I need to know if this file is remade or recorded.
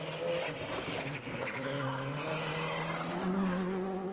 recorded